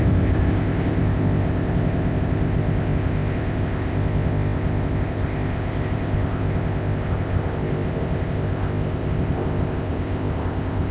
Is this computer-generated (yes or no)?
yes